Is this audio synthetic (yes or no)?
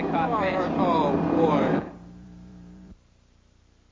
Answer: yes